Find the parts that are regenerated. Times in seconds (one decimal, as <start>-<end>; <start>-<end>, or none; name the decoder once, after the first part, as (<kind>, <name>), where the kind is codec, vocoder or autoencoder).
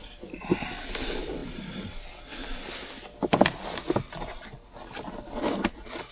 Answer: none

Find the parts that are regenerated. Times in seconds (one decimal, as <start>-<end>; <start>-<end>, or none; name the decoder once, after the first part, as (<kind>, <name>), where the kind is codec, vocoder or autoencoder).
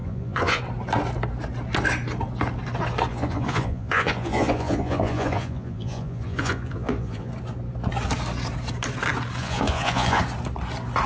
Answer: 0.0-0.6 (vocoder, Vocos); 3.1-7.3; 9.4-10.2